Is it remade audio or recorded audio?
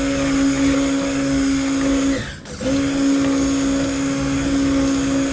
recorded